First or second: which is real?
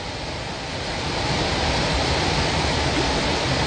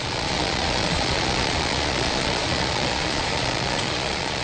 first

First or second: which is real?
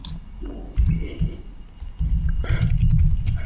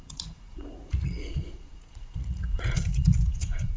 first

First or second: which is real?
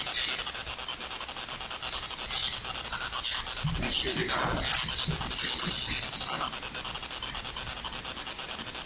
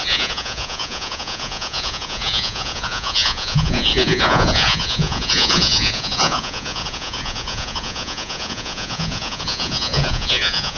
first